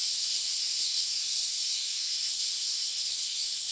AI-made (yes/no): yes